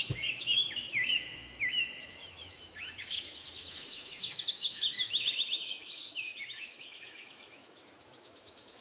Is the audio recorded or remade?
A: remade